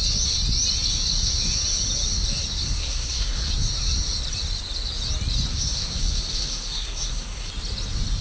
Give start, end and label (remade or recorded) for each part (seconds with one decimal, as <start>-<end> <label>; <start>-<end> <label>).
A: 0.0-2.8 recorded; 2.8-3.5 remade; 3.5-5.5 recorded; 5.5-7.5 remade; 7.5-8.2 recorded